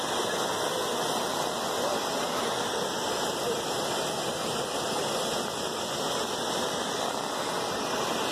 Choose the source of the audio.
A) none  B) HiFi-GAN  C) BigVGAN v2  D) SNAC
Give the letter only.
A